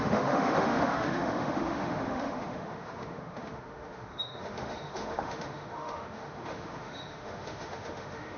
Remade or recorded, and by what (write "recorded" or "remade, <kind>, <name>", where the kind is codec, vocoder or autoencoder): remade, autoencoder, DAC-VAE